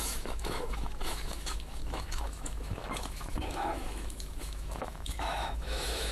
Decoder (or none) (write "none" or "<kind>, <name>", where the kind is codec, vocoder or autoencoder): autoencoder, DAC-VAE